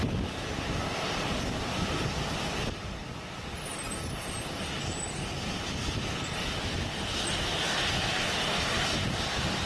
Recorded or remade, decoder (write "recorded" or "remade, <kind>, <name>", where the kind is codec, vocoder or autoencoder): recorded